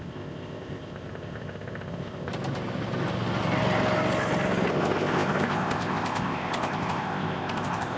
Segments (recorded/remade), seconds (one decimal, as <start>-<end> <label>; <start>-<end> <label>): 0.0-2.3 remade; 2.3-4.7 recorded; 4.7-8.0 remade